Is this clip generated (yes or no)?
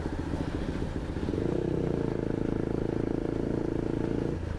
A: no